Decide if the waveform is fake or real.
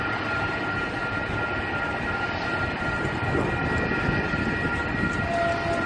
real